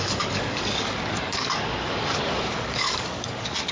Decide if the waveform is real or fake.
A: fake